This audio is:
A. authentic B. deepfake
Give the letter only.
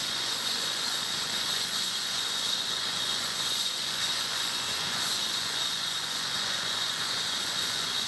B